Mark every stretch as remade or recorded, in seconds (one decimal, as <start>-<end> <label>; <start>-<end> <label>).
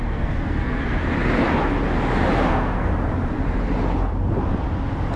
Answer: 0.0-1.0 remade; 1.0-2.5 recorded; 2.5-2.9 remade; 2.9-5.2 recorded